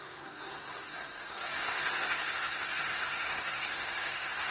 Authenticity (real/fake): fake